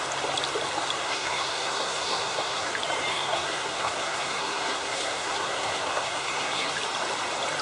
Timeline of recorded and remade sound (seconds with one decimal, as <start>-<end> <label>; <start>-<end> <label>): 0.0-1.0 recorded; 1.0-2.7 remade; 2.7-3.1 recorded; 3.1-6.7 remade; 6.7-7.6 recorded